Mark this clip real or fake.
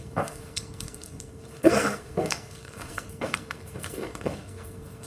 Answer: fake